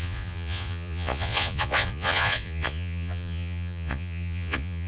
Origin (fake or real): fake